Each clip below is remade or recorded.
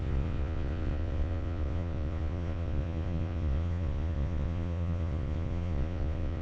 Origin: remade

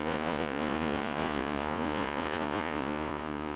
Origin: remade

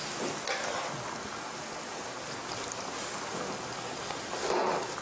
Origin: recorded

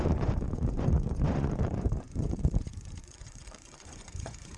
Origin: remade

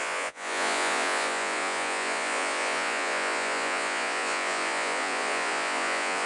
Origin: remade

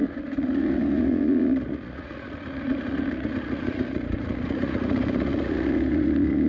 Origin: remade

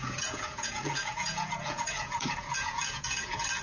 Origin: remade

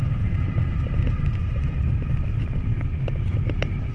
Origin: recorded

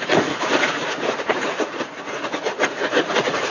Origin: remade